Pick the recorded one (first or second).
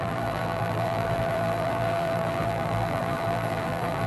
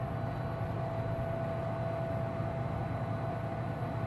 second